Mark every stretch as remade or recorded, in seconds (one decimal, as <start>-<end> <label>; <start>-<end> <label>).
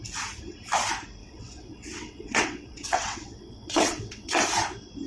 0.0-1.2 recorded; 1.2-4.3 remade; 4.3-5.1 recorded